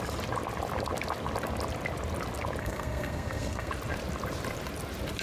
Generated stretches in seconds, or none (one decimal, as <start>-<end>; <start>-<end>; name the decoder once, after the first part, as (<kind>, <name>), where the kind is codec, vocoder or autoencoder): 2.6-3.7 (codec, SNAC)